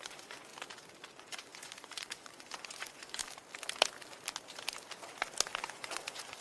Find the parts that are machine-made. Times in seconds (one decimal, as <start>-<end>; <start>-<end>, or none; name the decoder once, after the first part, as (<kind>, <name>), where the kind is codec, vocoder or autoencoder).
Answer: 0.0-0.5 (vocoder, Vocos); 1.1-3.2; 5.6-6.4